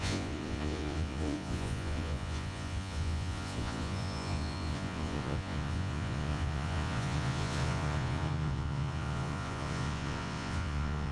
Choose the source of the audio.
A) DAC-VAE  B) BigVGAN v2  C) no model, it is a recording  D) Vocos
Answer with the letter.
D